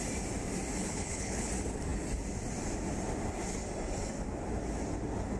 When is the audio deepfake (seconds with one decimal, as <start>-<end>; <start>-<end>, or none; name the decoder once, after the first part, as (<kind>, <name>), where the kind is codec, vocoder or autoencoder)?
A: 0.8-1.5 (codec, HILCodec)